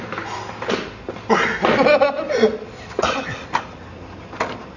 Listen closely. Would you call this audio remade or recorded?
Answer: recorded